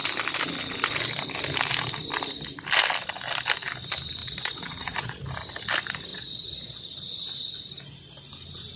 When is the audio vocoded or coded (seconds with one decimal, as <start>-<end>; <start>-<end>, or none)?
4.2-5.2; 6.1-6.8